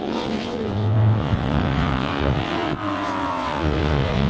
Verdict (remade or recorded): remade